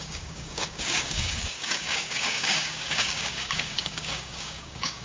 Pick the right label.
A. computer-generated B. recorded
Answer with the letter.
A